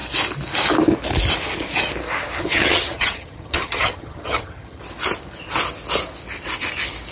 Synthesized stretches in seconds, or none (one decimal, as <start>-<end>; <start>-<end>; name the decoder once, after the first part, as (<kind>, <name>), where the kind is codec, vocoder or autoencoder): 2.4-4.8 (vocoder, HiFi-GAN)